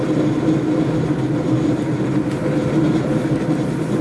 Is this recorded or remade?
recorded